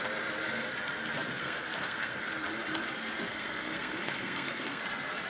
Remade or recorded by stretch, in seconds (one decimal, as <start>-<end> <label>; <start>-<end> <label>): 0.0-1.4 recorded; 1.4-2.2 remade; 2.2-3.3 recorded; 3.3-4.8 remade; 4.8-5.3 recorded